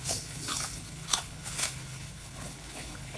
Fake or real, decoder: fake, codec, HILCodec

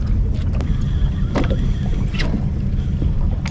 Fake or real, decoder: real